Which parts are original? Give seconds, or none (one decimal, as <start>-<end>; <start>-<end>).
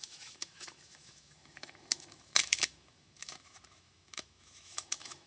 none